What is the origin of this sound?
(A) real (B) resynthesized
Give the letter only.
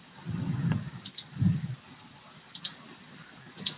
B